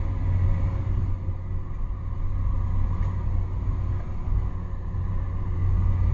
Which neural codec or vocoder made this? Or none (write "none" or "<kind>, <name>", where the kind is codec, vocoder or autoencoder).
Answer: none